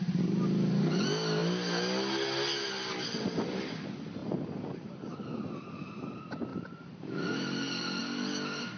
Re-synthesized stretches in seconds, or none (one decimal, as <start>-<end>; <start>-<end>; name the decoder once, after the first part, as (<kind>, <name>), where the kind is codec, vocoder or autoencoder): 4.2-4.9 (vocoder, BigVGAN v2); 6.5-8.0